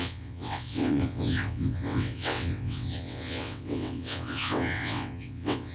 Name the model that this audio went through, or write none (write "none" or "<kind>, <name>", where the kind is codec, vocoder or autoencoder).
vocoder, WaveNeXt